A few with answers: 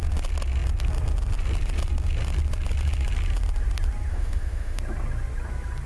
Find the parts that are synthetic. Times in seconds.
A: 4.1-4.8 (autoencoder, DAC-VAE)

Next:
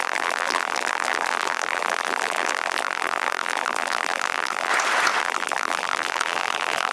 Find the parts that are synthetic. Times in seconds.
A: 0.0-4.7 (vocoder, BigVGAN v2); 5.2-6.9

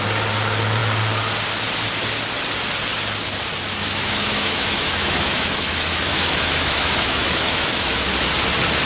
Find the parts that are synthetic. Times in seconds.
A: 3.7-8.1 (autoencoder, DAC-VAE)